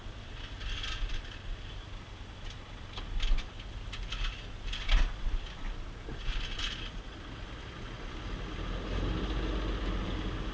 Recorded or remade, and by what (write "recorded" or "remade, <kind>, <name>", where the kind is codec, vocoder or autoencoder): recorded